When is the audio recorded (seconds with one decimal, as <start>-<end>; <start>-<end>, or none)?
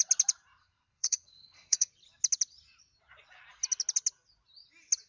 0.0-0.6; 1.9-5.1